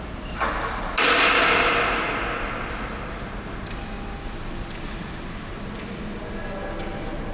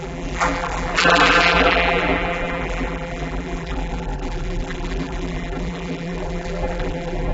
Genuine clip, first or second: first